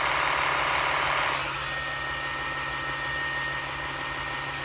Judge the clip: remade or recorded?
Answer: recorded